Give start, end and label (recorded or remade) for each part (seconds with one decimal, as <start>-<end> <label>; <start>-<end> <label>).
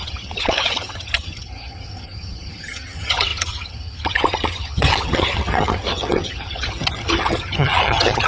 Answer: 0.0-8.3 remade